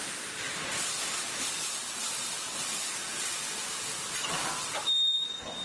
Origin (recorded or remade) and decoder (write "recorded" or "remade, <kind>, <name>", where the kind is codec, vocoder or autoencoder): recorded